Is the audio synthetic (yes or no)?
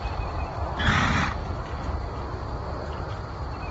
no